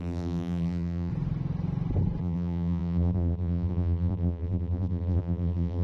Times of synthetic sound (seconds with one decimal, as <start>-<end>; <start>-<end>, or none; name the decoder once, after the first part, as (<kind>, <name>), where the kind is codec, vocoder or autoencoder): 0.0-1.1 (vocoder, BigVGAN v2); 2.2-5.8